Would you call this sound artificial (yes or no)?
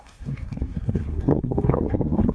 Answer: yes